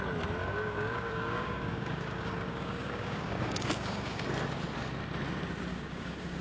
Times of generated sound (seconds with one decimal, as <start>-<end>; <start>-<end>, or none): 0.4-4.2; 5.7-6.4